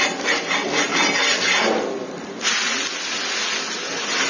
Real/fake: real